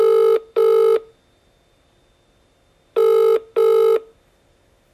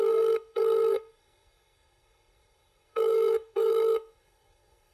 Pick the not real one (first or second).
second